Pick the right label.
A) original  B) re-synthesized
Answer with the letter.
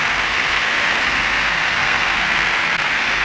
B